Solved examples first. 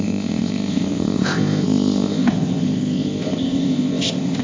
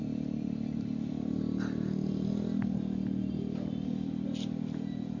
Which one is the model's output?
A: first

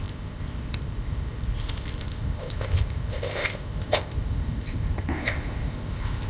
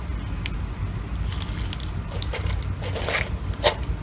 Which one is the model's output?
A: first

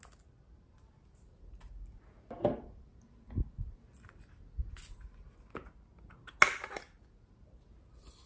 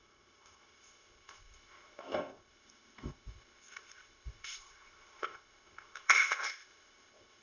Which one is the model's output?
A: second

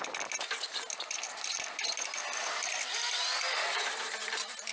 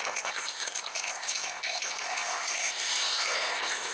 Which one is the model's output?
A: second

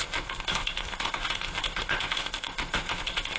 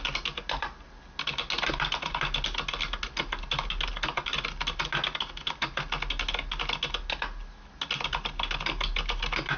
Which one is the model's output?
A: first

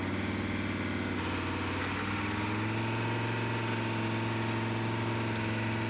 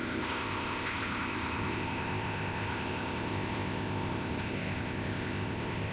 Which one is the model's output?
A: second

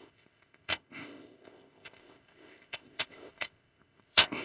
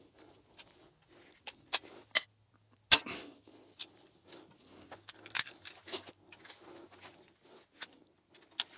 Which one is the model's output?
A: first